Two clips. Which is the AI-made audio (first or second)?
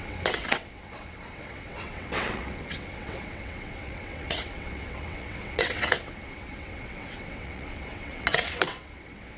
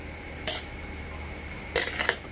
first